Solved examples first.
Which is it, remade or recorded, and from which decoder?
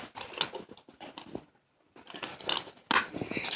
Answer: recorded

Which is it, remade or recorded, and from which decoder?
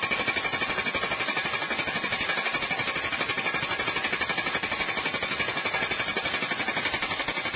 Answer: recorded